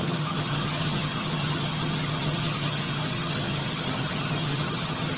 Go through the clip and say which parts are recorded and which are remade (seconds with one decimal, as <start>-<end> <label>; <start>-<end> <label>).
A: 0.0-5.2 remade